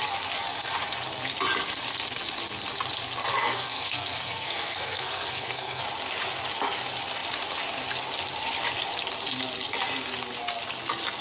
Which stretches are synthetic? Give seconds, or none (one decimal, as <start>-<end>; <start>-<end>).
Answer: 3.3-5.8